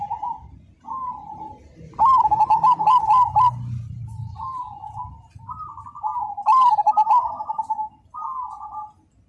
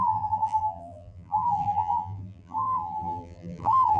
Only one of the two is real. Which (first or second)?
first